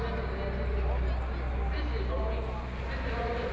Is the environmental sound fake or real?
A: real